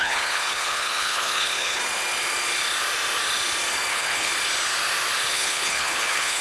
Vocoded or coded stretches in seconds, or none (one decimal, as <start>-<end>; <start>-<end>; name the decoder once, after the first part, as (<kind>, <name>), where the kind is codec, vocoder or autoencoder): 0.0-1.8 (codec, HILCodec); 3.9-4.3; 5.3-6.4